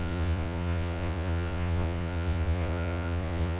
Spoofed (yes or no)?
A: yes